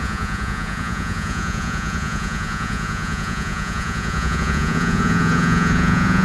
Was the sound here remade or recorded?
remade